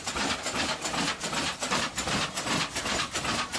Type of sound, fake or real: real